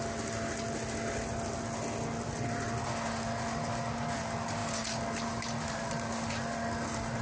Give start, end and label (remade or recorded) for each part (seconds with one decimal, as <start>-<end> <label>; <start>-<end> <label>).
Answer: 0.0-7.2 recorded